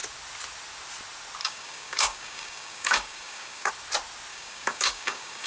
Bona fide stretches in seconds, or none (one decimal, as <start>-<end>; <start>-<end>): 0.0-1.4; 3.7-4.3